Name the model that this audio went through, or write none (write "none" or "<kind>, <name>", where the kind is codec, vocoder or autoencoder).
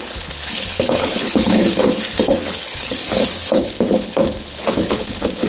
codec, HILCodec